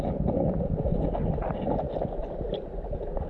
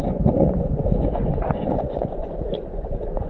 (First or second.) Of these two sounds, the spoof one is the second